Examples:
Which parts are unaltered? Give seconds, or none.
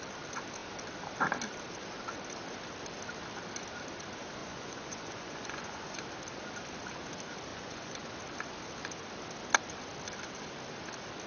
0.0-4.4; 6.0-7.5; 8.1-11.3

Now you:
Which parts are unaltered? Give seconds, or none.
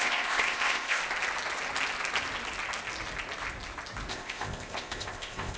1.0-4.1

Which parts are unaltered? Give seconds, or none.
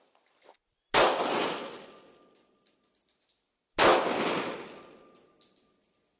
0.0-6.2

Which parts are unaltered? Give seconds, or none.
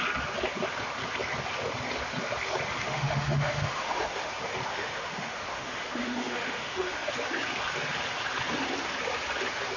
0.0-2.8; 4.3-4.7; 7.1-9.8